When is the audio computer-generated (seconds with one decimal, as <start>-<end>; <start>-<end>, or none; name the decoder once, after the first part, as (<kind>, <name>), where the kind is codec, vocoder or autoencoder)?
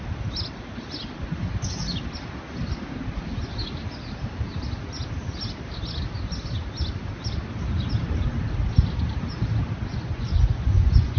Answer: 9.9-11.2 (vocoder, Vocos)